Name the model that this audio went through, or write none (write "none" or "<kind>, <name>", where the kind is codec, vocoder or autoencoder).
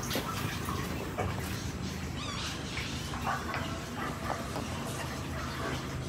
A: vocoder, BigVGAN v2